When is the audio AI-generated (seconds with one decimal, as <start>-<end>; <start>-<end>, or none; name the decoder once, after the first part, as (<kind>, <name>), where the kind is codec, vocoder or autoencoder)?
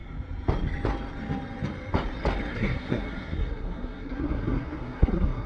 2.5-5.5 (codec, SNAC)